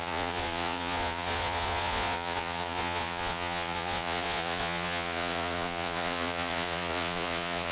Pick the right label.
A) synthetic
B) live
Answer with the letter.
A